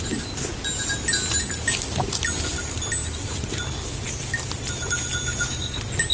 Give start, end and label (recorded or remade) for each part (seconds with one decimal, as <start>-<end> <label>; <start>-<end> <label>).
0.0-6.1 recorded